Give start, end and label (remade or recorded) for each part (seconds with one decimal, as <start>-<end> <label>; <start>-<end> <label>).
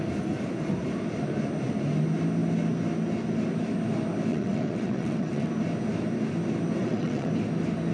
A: 0.0-4.3 recorded; 4.3-5.5 remade; 5.5-6.8 recorded; 6.8-7.3 remade; 7.3-7.9 recorded